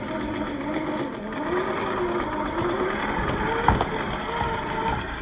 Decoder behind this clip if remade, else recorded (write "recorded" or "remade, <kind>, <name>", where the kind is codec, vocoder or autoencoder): recorded